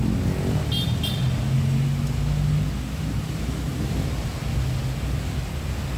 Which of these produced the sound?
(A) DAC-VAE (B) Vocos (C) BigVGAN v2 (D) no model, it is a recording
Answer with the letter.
D